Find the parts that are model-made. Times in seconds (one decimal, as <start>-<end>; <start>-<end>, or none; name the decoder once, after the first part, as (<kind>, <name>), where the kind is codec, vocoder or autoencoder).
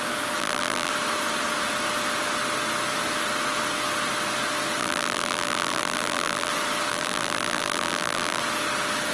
0.4-0.9 (vocoder, BigVGAN v2); 4.8-6.5; 6.9-8.4